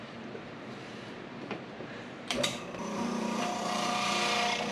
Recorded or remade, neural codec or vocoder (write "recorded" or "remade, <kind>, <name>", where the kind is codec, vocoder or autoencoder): remade, vocoder, BigVGAN v2